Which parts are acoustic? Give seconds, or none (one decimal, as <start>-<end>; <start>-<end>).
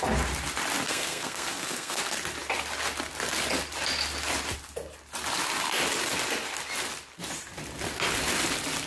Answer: 0.0-0.9; 2.0-8.9